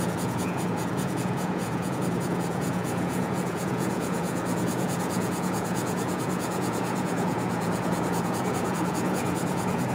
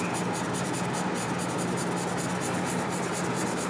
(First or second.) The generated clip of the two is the first